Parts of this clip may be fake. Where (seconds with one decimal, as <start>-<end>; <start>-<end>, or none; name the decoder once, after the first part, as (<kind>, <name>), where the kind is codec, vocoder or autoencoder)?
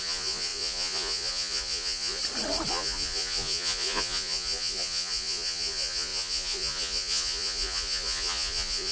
0.0-2.2 (vocoder, Vocos); 2.7-8.9